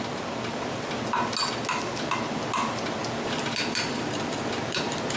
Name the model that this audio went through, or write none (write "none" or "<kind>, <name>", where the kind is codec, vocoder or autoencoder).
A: none